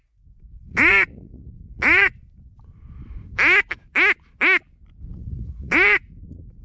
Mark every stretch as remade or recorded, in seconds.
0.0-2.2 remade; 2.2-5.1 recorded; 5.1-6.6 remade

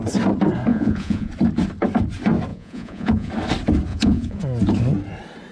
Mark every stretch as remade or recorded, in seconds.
0.0-0.7 recorded; 0.7-1.3 remade; 1.3-2.5 recorded; 2.5-3.3 remade; 3.3-3.9 recorded; 3.9-4.4 remade; 4.4-5.5 recorded

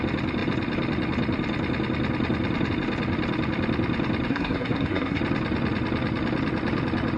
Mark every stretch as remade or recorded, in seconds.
0.0-4.3 recorded; 4.3-5.2 remade; 5.2-7.2 recorded

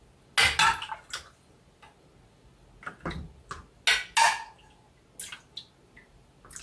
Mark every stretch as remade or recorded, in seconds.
0.0-6.6 recorded

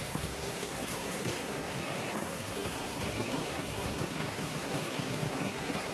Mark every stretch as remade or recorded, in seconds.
0.0-5.9 remade

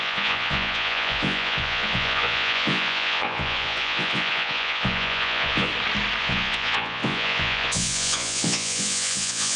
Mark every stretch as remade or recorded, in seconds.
0.0-5.7 remade; 5.7-6.2 recorded; 6.2-9.6 remade

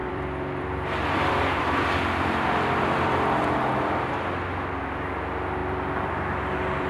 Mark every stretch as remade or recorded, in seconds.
0.0-4.1 remade; 4.1-5.6 recorded; 5.6-6.9 remade